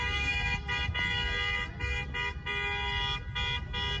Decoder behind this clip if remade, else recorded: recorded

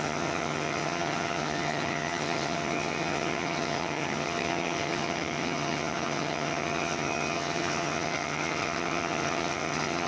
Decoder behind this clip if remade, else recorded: remade, vocoder, HiFi-GAN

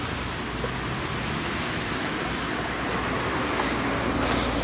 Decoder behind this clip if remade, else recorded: recorded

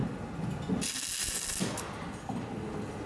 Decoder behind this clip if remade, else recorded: recorded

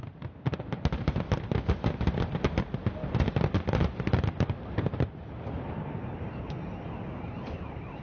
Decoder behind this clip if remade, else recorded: recorded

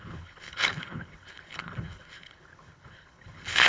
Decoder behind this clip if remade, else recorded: remade, codec, HILCodec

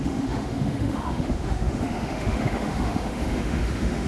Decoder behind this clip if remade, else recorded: remade, autoencoder, DAC-VAE